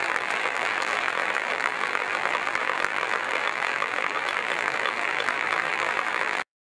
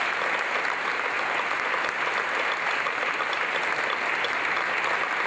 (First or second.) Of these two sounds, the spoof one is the first